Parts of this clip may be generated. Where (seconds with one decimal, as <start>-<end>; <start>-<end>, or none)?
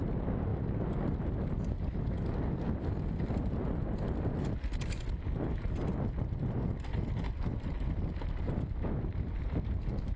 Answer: none